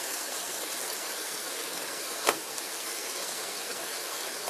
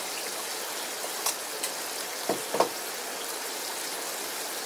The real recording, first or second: second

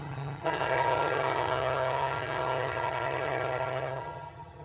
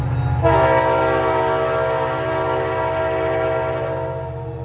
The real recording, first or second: second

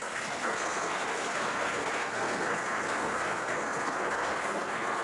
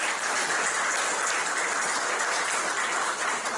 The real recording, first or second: second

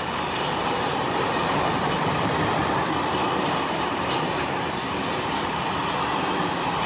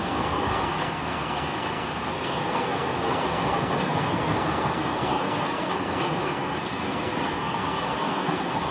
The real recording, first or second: first